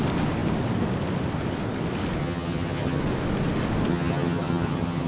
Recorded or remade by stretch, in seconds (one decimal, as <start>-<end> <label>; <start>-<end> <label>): 0.0-2.2 recorded; 2.2-3.0 remade; 3.0-3.9 recorded; 3.9-5.1 remade